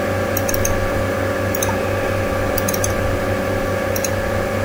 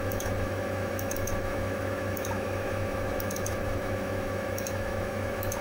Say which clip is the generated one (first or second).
second